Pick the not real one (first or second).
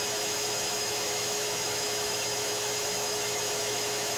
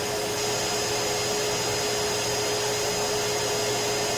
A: first